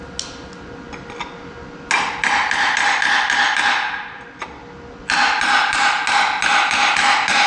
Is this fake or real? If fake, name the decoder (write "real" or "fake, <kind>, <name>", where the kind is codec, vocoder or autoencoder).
real